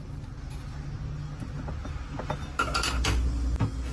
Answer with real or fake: real